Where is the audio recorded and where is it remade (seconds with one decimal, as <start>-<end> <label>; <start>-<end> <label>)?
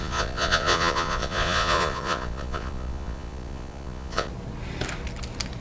0.0-4.3 remade; 4.3-5.6 recorded